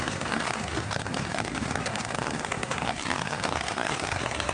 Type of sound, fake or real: fake